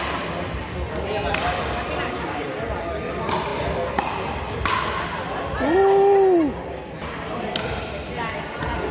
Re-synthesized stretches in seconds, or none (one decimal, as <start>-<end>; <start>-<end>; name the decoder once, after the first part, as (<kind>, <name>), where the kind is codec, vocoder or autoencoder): none